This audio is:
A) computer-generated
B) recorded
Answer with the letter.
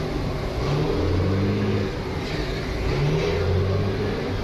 B